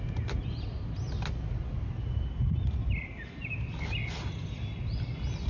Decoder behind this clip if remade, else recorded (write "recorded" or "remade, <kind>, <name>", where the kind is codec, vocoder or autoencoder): recorded